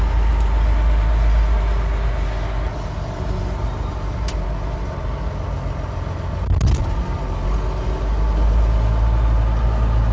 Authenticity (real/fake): real